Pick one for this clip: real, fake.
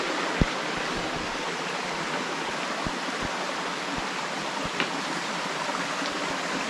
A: real